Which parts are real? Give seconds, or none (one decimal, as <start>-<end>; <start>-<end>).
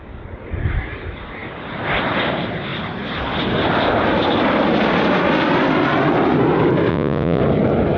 0.0-6.9; 7.4-8.0